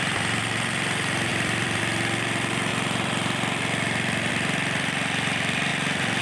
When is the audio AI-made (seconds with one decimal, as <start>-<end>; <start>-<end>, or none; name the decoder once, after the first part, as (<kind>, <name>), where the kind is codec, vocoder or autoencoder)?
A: 1.3-1.8 (vocoder, BigVGAN v2); 2.7-4.3